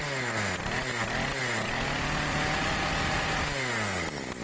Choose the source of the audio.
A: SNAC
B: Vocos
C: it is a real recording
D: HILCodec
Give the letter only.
C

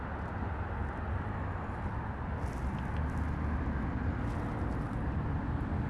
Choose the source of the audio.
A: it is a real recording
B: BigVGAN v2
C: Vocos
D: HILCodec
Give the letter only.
A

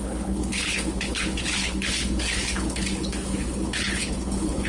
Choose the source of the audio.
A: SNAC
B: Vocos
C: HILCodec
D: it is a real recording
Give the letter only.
C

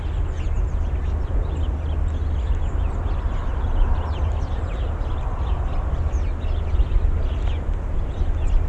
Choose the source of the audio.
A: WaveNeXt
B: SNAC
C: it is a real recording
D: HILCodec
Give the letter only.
C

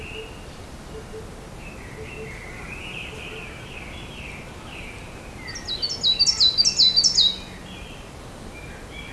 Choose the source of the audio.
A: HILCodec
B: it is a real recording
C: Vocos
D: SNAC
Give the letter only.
B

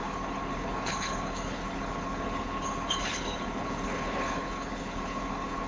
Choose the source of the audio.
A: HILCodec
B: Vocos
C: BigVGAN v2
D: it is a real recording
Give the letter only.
A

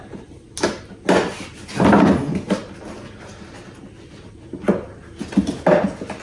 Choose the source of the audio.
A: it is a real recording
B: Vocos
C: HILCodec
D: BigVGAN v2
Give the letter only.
A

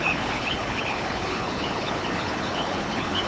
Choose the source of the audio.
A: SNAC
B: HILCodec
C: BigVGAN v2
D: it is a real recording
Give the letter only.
B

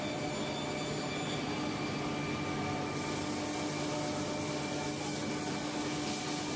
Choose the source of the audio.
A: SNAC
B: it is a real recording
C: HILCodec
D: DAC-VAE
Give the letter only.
B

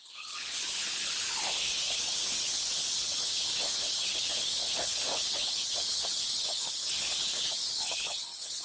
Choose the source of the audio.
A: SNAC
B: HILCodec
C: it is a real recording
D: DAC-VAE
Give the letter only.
B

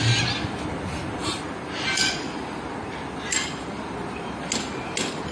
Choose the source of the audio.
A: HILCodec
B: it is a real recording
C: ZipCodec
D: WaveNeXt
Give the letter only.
B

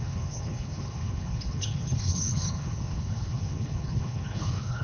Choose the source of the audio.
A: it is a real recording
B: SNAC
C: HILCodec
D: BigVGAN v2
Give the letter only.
C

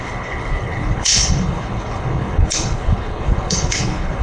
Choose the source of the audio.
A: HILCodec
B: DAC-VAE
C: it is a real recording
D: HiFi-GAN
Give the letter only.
A